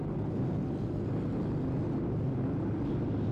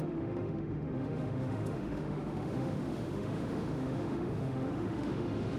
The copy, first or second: second